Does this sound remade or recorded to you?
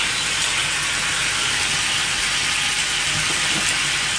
recorded